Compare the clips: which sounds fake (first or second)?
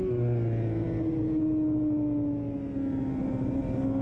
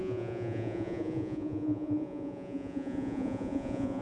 second